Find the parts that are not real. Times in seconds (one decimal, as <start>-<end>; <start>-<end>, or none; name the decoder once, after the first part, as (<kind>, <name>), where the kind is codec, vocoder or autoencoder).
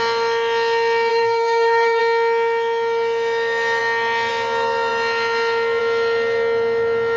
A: 1.1-2.0 (codec, SNAC)